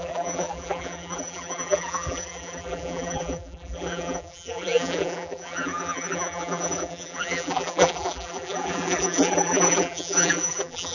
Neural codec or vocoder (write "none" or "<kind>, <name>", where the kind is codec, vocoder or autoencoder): vocoder, BigVGAN v2